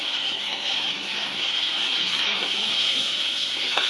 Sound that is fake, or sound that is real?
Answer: fake